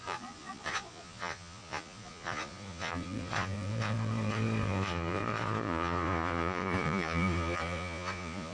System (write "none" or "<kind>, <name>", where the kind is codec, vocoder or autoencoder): vocoder, Vocos